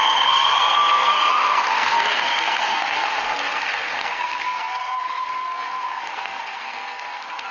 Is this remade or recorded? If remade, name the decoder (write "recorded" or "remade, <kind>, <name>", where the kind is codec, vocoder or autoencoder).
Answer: remade, codec, SNAC